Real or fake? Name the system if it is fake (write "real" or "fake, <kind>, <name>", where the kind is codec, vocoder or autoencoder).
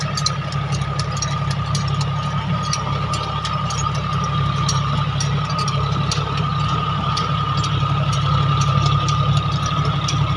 real